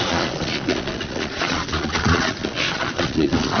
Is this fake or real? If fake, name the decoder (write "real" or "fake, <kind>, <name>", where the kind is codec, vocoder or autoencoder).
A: fake, vocoder, Vocos